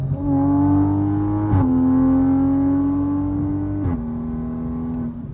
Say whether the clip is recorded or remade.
recorded